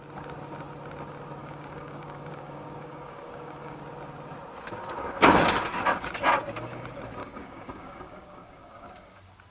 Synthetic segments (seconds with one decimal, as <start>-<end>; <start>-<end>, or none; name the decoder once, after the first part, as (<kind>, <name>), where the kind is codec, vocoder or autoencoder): 1.4-3.8 (codec, DAC); 7.2-8.9